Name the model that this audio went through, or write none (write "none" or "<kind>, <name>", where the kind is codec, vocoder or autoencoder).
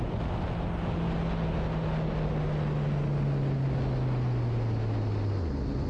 none